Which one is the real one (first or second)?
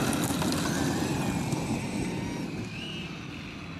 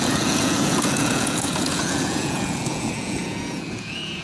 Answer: first